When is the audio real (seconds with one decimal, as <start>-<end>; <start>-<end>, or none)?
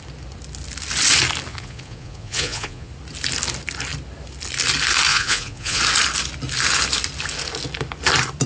0.0-1.5; 2.9-5.1; 5.8-8.5